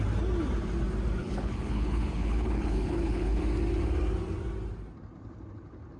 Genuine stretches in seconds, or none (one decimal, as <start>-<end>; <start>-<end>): 0.0-1.2; 3.4-6.0